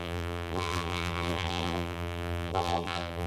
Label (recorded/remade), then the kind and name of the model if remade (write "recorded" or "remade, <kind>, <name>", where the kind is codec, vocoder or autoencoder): remade, vocoder, BigVGAN v2